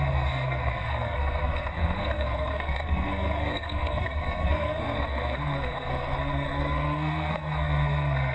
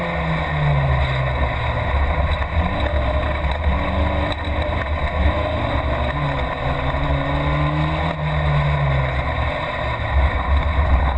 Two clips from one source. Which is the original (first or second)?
second